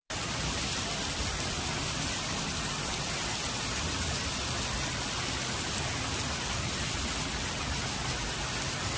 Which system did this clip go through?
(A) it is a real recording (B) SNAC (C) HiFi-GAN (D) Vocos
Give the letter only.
A